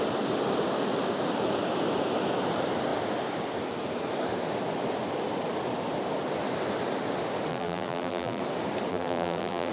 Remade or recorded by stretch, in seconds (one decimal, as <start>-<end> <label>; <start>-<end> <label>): 0.0-7.5 recorded; 7.5-8.4 remade; 8.4-8.9 recorded; 8.9-9.7 remade